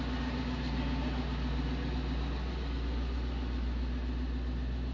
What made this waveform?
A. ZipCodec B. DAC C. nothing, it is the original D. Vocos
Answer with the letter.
C